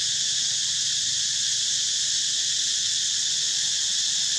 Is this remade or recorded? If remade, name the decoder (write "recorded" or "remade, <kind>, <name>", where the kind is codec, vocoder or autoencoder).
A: recorded